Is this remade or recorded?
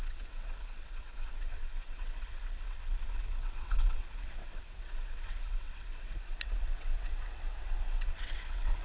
remade